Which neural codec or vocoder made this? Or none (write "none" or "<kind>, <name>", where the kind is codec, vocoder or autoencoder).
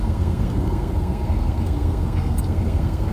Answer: codec, SNAC